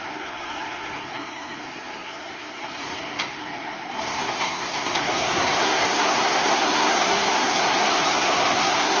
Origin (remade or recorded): remade